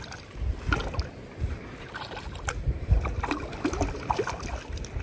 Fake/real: fake